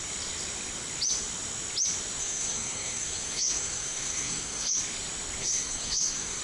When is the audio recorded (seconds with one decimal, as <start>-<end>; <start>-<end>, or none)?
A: 0.0-2.2; 4.8-5.4